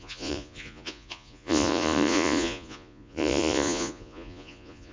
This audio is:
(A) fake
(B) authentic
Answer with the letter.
A